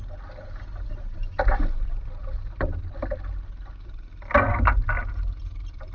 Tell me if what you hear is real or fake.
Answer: real